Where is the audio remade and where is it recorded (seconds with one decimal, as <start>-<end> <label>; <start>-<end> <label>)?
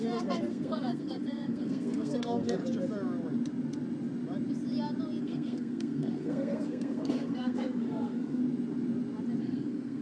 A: 0.0-2.6 remade; 2.6-5.2 recorded; 5.2-8.4 remade; 8.4-9.4 recorded; 9.4-10.0 remade